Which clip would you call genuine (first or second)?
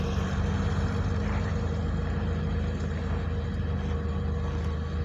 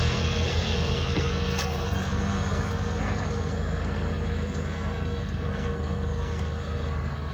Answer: first